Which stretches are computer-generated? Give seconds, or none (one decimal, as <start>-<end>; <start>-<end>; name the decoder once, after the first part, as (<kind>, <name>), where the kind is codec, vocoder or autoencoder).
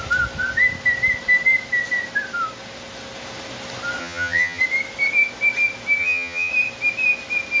4.0-4.6 (vocoder, HiFi-GAN); 6.0-6.5